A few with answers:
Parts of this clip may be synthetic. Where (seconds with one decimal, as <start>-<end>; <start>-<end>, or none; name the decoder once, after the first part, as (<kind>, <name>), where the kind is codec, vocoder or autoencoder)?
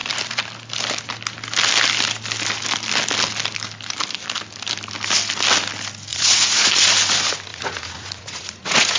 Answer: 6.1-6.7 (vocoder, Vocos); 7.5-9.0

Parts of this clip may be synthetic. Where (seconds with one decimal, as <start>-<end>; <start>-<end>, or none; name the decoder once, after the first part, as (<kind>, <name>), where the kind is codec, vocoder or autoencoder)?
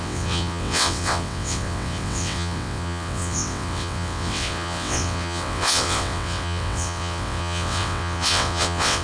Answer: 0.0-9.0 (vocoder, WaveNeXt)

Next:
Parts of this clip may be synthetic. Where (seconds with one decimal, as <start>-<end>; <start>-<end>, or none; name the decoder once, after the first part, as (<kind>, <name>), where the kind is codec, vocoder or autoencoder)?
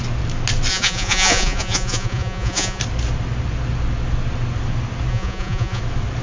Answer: 0.7-2.8 (vocoder, Vocos); 5.1-5.8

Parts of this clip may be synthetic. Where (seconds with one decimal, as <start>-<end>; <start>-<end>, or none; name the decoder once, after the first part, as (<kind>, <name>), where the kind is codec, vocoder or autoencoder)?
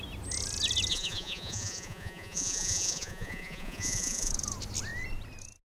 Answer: 0.9-4.3 (vocoder, Vocos)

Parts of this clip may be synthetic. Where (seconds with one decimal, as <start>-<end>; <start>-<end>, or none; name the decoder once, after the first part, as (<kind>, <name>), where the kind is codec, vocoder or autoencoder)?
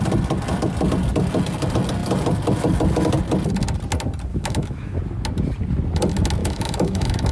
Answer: 4.3-5.0 (autoencoder, DAC-VAE); 6.4-7.3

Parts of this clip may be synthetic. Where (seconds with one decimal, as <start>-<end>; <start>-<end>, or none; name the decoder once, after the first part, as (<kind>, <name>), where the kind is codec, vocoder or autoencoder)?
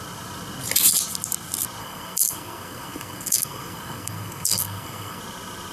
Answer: 1.8-5.2 (codec, SNAC)